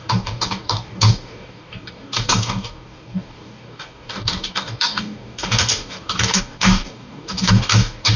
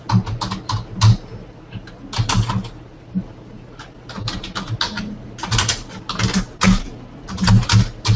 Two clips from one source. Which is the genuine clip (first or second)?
second